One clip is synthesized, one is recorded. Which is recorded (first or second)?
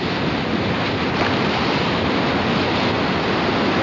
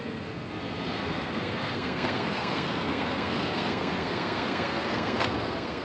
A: first